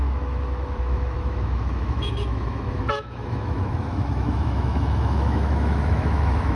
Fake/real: fake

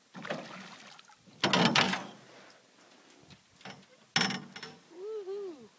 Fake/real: real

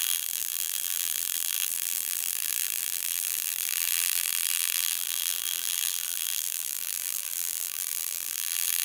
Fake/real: fake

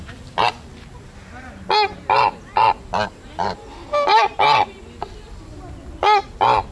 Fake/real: real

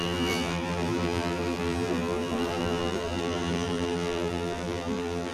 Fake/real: fake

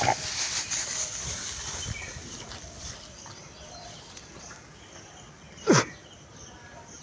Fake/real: real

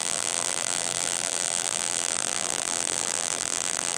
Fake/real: fake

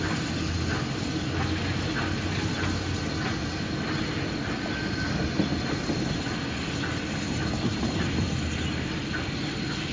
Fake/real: real